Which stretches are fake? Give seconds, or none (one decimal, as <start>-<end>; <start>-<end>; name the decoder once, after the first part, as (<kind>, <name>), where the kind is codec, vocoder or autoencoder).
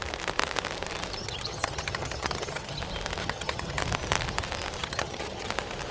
1.2-2.8 (vocoder, HiFi-GAN); 3.2-3.8; 4.8-5.5